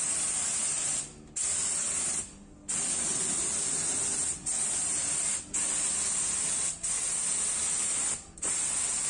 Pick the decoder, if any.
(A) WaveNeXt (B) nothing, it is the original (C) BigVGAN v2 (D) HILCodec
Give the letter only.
B